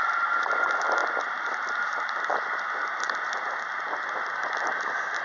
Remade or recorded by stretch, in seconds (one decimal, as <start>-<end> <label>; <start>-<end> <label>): 0.0-5.2 recorded